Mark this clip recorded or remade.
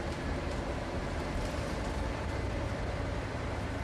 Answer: remade